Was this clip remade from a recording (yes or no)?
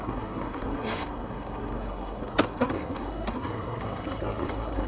yes